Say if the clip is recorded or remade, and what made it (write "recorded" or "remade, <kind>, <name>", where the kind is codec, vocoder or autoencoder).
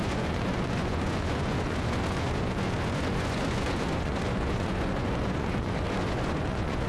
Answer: remade, vocoder, Vocos